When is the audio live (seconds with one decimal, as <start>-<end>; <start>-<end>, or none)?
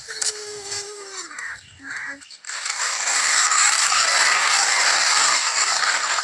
none